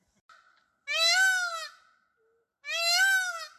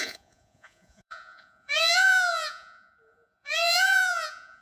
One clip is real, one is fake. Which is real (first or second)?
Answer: first